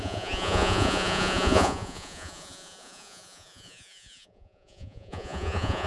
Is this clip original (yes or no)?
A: no